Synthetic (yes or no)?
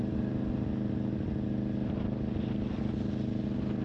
no